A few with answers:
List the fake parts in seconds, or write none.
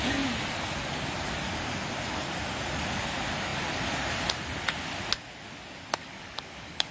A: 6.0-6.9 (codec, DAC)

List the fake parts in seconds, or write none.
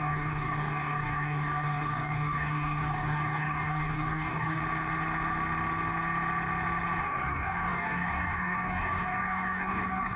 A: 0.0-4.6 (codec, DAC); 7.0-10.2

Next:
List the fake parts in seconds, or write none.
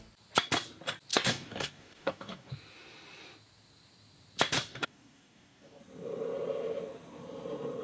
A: 1.1-2.5 (codec, DAC); 4.7-5.8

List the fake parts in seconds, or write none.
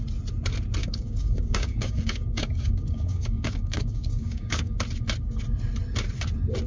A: 0.8-4.8 (codec, DAC)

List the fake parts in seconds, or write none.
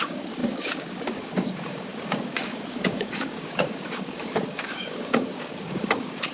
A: 0.0-6.3 (codec, DAC)